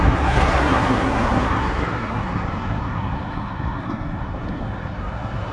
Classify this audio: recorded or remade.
remade